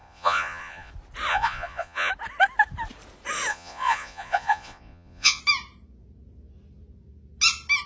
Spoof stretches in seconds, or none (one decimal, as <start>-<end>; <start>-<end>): 0.0-0.9; 1.3-2.1; 3.5-5.4